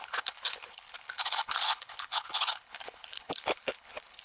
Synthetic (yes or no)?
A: yes